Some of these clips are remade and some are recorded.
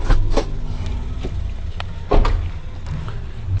recorded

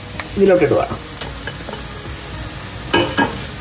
recorded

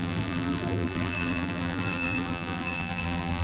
remade